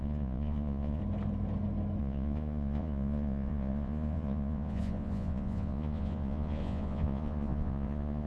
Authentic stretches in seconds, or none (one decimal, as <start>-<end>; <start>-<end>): 1.0-2.0